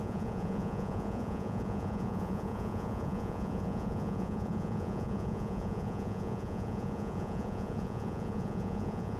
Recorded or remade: remade